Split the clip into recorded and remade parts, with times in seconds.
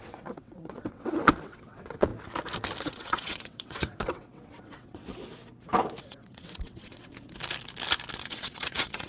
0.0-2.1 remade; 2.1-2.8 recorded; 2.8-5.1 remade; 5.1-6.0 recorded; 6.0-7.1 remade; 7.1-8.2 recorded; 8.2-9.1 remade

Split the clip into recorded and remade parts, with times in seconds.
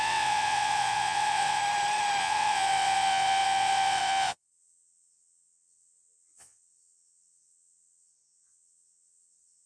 0.0-1.6 remade; 1.6-2.2 recorded; 2.2-9.7 remade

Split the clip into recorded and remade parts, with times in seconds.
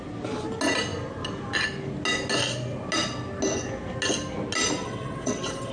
0.0-4.8 recorded; 4.8-5.7 remade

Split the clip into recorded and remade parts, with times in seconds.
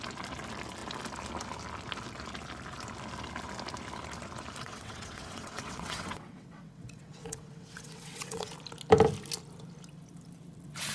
0.0-4.6 recorded; 4.6-8.5 remade; 8.5-10.9 recorded